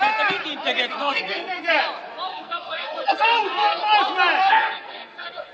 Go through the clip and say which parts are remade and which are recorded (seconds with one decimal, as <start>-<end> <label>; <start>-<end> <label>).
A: 0.0-0.9 recorded; 0.9-1.8 remade; 1.8-2.3 recorded; 2.3-3.8 remade; 3.8-4.4 recorded; 4.4-5.5 remade